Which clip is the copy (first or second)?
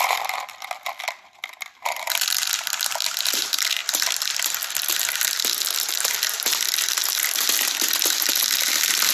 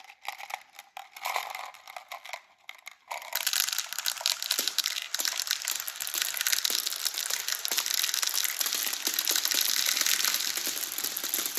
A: first